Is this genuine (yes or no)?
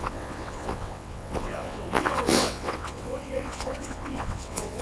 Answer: no